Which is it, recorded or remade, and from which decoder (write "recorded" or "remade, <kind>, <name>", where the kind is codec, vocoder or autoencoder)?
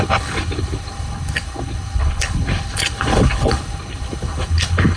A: remade, codec, HILCodec